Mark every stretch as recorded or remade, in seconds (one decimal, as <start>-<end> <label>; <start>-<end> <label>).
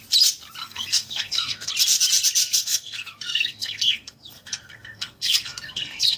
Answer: 0.0-0.6 recorded; 0.6-1.7 remade; 1.7-2.4 recorded; 2.4-6.2 remade